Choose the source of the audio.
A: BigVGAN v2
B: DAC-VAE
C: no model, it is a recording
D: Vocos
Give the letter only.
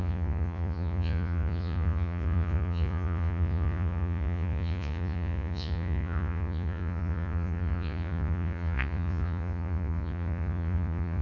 D